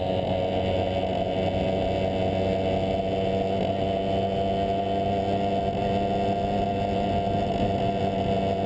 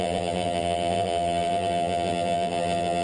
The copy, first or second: second